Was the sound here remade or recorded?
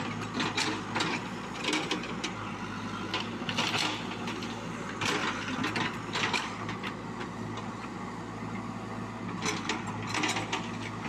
recorded